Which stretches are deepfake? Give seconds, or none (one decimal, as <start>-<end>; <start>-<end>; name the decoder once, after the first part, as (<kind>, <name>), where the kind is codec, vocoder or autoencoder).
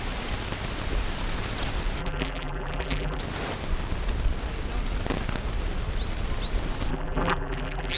2.0-3.2 (vocoder, BigVGAN v2); 6.9-8.0